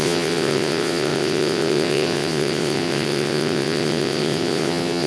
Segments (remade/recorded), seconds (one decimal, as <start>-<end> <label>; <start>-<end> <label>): 0.0-5.1 remade